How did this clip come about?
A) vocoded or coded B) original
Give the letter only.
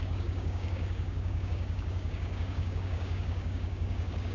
A